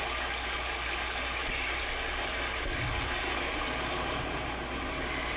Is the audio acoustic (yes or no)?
yes